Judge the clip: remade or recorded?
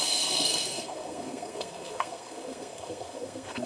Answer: remade